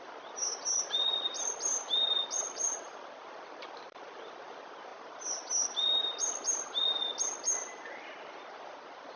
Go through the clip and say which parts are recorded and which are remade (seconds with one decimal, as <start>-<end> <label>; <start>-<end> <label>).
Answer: 0.0-9.2 recorded